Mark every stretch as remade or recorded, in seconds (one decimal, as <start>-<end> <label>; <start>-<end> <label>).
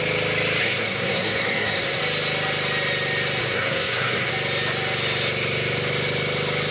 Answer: 0.0-0.6 recorded; 0.6-2.0 remade; 2.0-3.4 recorded; 3.4-4.3 remade; 4.3-6.7 recorded